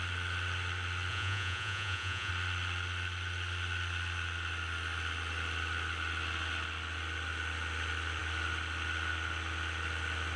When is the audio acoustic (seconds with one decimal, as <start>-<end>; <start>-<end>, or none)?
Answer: 0.0-1.1; 2.3-10.4